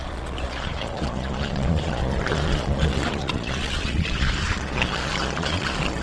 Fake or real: fake